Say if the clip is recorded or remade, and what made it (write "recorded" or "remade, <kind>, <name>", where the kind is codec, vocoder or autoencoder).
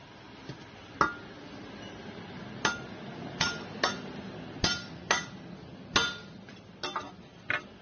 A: recorded